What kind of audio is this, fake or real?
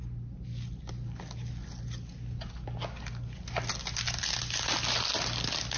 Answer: real